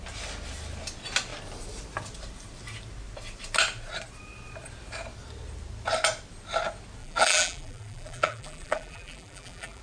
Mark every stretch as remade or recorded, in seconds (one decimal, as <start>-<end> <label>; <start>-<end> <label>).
0.0-7.0 recorded; 7.0-9.8 remade